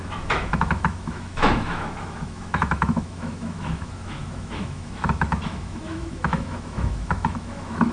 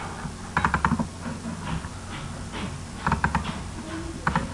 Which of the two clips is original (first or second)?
second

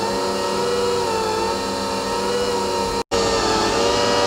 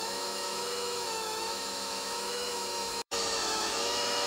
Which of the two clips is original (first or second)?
first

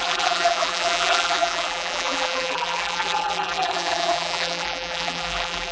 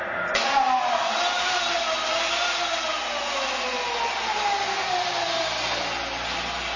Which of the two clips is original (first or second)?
second